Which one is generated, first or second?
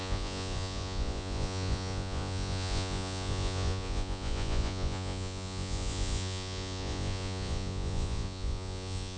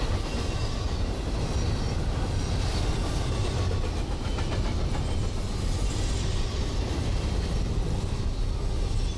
first